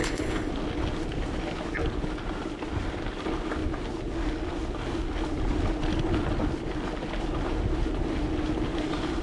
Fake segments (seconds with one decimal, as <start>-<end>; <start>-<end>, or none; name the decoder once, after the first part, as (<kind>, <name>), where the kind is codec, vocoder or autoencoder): 0.0-0.5 (codec, HILCodec)